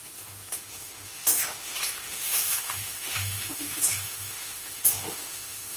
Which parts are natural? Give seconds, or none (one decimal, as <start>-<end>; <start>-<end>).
none